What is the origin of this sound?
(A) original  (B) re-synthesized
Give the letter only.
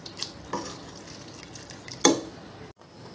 A